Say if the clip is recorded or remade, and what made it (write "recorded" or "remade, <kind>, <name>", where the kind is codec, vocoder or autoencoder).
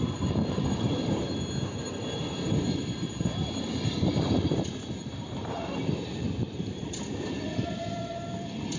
remade, vocoder, BigVGAN v2